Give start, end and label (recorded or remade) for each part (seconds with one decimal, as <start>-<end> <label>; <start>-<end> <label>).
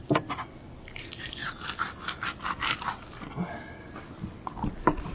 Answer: 0.0-5.1 recorded